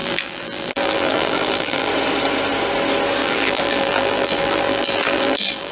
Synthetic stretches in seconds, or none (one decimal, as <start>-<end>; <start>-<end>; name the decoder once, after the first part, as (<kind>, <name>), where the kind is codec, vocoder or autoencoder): 0.0-1.9 (vocoder, BigVGAN v2); 3.2-5.7